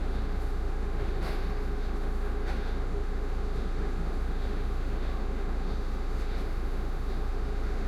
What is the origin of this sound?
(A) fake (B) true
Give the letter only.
A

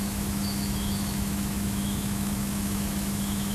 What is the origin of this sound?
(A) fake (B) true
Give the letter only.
A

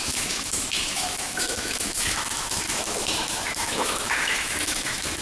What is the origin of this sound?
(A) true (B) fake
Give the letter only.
B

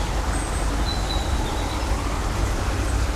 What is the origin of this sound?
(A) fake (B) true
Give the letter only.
B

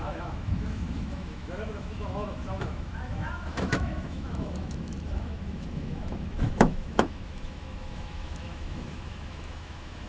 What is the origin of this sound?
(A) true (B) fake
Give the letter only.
B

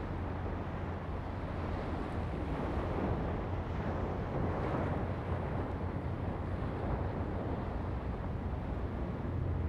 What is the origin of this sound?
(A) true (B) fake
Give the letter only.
A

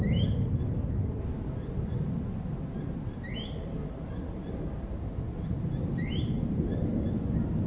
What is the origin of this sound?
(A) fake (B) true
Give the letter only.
B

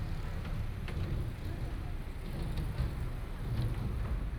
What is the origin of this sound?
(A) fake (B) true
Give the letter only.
B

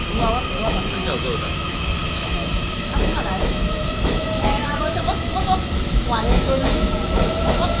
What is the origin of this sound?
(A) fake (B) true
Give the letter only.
A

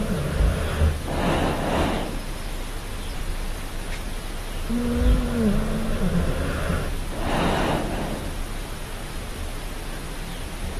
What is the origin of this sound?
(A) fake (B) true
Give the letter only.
B